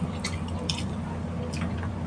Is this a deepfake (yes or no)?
yes